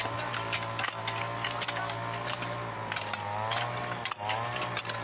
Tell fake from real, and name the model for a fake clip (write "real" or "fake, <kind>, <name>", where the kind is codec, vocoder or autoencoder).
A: real